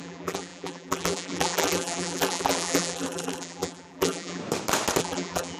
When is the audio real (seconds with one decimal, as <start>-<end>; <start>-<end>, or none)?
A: 4.4-5.0